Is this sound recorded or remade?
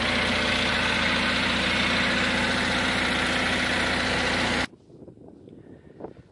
recorded